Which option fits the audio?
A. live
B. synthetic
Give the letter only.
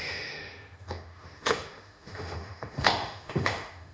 B